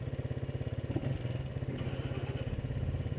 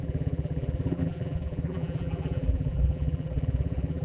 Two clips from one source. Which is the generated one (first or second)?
second